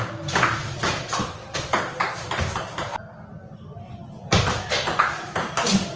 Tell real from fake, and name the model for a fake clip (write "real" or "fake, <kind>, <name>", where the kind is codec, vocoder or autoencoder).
real